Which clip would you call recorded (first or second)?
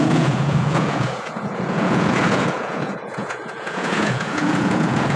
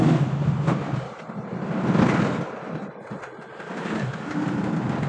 second